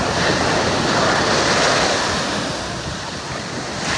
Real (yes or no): yes